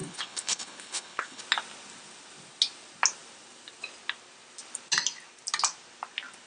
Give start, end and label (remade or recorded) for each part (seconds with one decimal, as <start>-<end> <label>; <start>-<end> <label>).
0.0-1.4 remade; 1.4-6.5 recorded

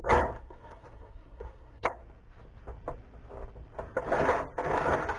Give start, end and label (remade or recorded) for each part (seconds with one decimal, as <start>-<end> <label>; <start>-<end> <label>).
0.0-2.0 remade; 2.0-5.2 recorded

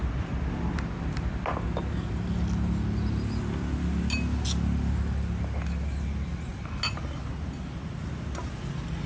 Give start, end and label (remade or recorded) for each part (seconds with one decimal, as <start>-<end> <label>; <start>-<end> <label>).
0.0-9.1 recorded

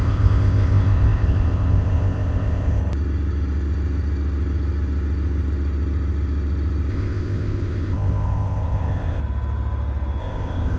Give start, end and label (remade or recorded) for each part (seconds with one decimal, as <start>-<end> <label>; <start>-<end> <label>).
0.0-2.8 remade; 2.8-6.9 recorded; 6.9-9.2 remade; 9.2-10.2 recorded; 10.2-10.8 remade

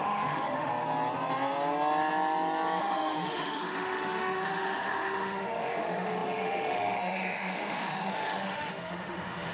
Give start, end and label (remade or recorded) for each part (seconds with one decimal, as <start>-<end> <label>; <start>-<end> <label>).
0.0-0.7 remade; 0.7-2.8 recorded; 2.8-9.5 remade